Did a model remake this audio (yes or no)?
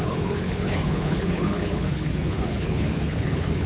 yes